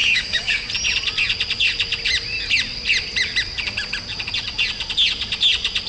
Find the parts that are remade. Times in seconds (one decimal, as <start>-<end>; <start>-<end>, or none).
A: 0.0-0.7